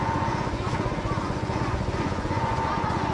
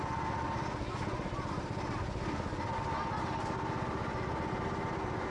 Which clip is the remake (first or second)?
first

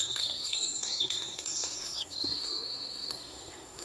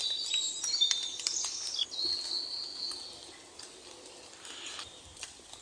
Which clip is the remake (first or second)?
first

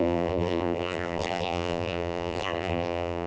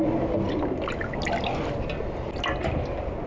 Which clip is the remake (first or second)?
first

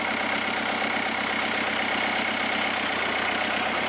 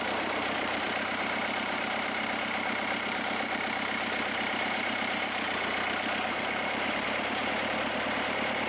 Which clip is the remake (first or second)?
second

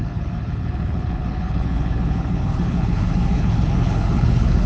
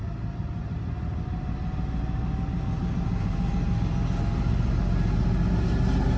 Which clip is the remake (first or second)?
first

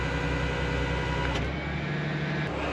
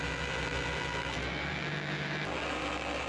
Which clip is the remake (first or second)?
second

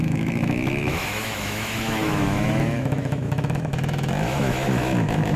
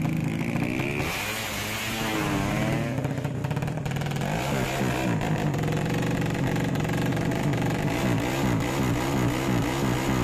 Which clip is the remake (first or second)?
first